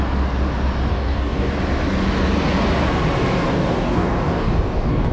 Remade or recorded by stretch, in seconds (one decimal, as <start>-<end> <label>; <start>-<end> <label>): 0.0-0.9 recorded; 0.9-1.5 remade; 1.5-3.5 recorded; 3.5-5.1 remade